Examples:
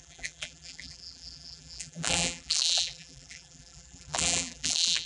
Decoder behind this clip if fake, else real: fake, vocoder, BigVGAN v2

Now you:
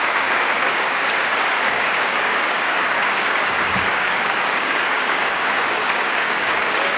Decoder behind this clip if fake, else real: fake, codec, DAC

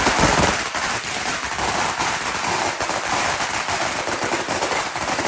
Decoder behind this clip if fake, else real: real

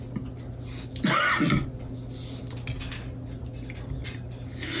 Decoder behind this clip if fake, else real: real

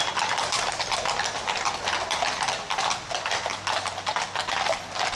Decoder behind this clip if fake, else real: real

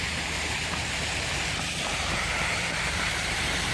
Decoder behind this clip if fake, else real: fake, vocoder, BigVGAN v2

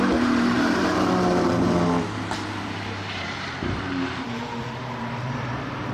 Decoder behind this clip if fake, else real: fake, vocoder, BigVGAN v2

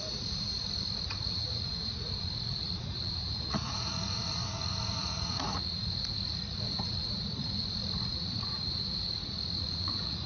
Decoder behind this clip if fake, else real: fake, vocoder, Vocos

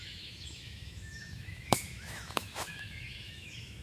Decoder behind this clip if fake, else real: fake, autoencoder, DAC-VAE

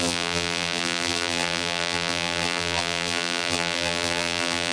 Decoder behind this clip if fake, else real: fake, vocoder, BigVGAN v2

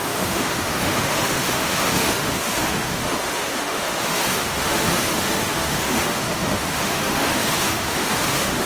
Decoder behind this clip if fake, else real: fake, autoencoder, DAC-VAE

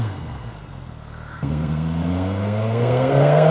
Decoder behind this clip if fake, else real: fake, codec, SNAC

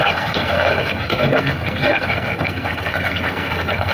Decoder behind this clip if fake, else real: fake, codec, SNAC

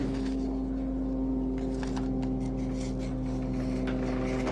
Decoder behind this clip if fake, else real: real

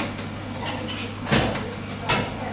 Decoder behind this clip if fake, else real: real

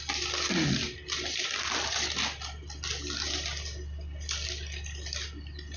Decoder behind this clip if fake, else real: real